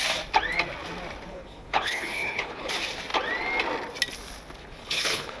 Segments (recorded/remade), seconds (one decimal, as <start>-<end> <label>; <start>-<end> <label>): 0.0-1.3 recorded; 1.3-2.7 remade; 2.7-4.6 recorded; 4.6-5.4 remade